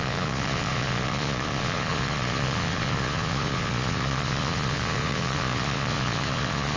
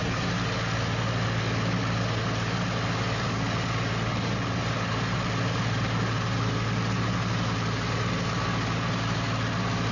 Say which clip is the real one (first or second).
second